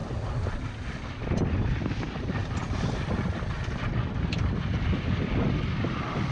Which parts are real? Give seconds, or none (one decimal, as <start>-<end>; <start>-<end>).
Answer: 0.0-6.3